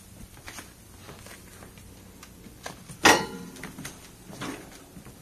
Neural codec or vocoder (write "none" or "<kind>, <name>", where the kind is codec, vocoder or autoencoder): none